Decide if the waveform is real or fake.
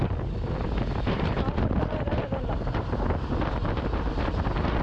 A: real